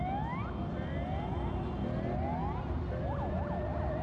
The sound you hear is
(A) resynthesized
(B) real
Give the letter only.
B